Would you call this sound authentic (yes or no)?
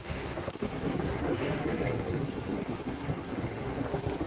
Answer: no